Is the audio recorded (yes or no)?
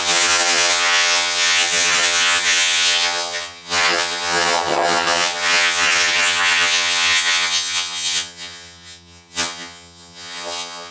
no